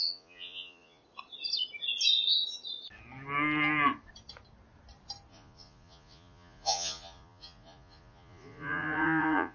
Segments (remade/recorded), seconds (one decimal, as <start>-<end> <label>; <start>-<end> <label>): 0.0-1.0 remade; 1.0-5.3 recorded; 5.3-9.5 remade